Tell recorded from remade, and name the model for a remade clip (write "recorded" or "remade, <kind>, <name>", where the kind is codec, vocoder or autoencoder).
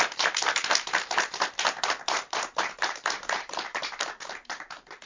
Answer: remade, vocoder, BigVGAN v2